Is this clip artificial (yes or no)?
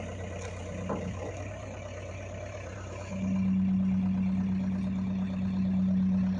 no